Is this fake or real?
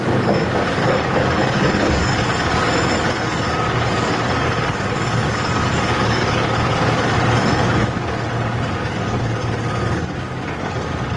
fake